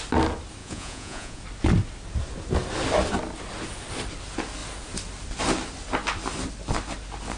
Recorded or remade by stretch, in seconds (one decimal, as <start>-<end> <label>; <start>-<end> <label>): 0.0-0.6 recorded; 0.6-1.4 remade; 1.4-7.4 recorded